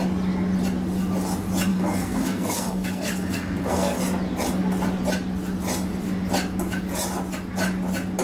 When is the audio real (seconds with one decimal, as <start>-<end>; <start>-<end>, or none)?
0.0-1.7; 4.0-8.2